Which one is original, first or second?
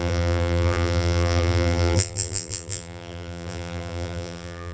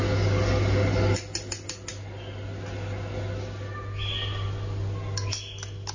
second